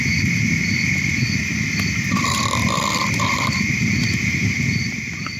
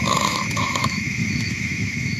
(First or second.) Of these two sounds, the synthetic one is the second